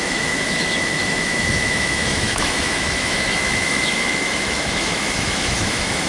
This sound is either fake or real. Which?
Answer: fake